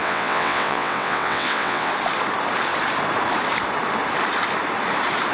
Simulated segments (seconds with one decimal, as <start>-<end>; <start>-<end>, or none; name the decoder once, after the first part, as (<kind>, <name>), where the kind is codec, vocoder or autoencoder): 0.0-1.9 (vocoder, WaveNeXt)